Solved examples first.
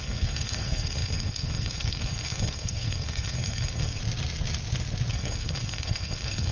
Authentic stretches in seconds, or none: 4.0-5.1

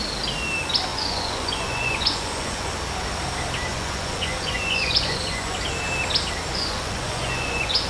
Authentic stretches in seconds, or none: 0.0-0.9; 2.7-3.7; 5.6-6.5

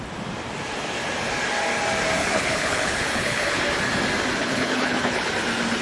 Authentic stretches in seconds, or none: 0.0-2.2; 3.6-4.4; 5.3-5.8

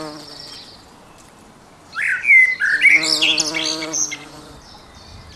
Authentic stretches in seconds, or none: 0.0-3.8; 4.6-5.4

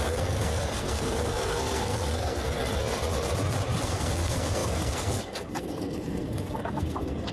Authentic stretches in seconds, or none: 2.6-3.8

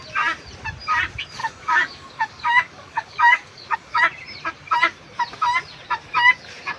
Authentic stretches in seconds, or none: 0.0-1.4; 4.0-6.8

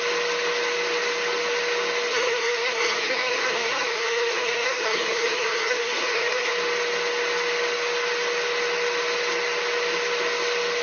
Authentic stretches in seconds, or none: 0.0-2.1; 6.5-10.8

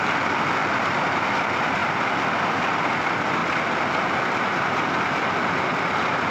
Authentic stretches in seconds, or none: 0.0-6.3